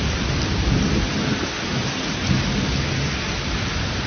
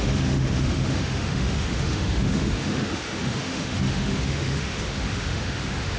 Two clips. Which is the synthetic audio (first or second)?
second